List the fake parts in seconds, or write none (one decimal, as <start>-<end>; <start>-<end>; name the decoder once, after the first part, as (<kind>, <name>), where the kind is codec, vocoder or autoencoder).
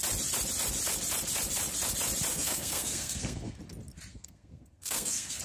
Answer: 2.3-3.6 (codec, SNAC); 4.1-5.4